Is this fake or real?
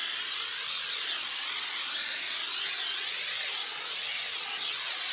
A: real